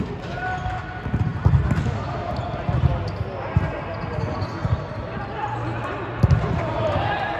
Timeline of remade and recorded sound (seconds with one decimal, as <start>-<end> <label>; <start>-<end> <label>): 0.0-7.4 recorded